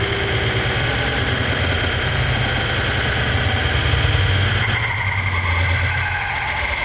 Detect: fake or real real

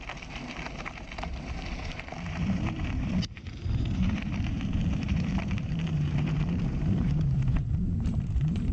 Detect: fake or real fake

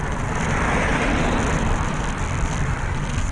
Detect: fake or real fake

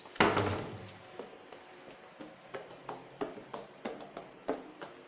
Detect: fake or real real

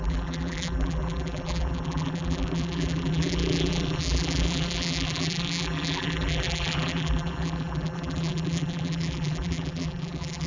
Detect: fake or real fake